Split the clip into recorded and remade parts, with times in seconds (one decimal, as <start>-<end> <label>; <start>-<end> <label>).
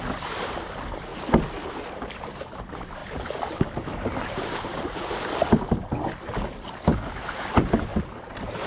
0.0-3.0 recorded; 3.0-5.3 remade; 5.3-7.9 recorded; 7.9-8.7 remade